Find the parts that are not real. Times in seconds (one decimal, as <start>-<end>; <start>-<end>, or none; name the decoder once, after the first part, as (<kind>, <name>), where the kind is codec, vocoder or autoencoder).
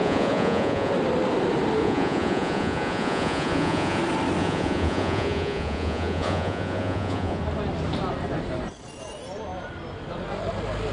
0.0-0.9 (vocoder, Vocos); 1.8-4.0; 4.4-7.4